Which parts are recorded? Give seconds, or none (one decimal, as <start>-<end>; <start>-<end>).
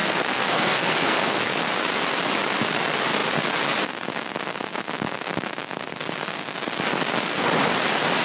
1.7-8.2